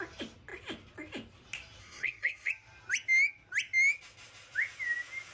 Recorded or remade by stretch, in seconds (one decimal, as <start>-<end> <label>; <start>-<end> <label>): 0.0-1.8 recorded; 1.8-2.5 remade; 2.5-5.3 recorded

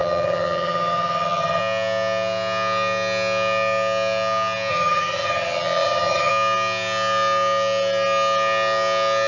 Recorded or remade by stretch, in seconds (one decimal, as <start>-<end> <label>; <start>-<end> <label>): 0.0-1.6 remade; 1.6-4.7 recorded; 4.7-6.3 remade; 6.3-9.3 recorded

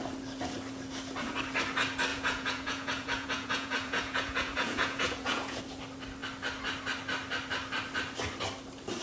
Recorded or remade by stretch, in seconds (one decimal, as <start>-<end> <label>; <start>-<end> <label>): 0.0-2.1 recorded; 2.1-5.6 remade; 5.6-9.0 recorded

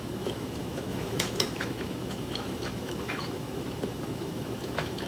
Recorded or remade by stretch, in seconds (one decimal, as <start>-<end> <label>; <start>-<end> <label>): 0.0-5.1 remade

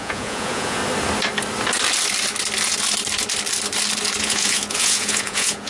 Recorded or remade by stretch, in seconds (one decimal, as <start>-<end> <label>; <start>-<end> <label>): 0.0-0.8 remade; 0.8-4.2 recorded; 4.2-5.7 remade

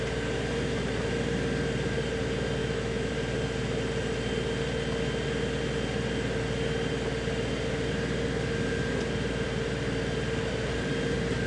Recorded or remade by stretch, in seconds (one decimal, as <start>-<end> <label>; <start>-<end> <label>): 0.0-2.6 recorded; 2.6-3.1 remade; 3.1-11.5 recorded

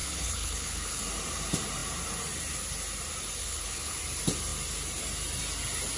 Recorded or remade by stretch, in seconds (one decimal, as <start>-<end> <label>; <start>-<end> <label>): 0.0-1.0 remade; 1.0-3.4 recorded; 3.4-4.0 remade; 4.0-6.0 recorded